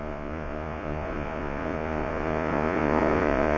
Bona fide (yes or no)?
no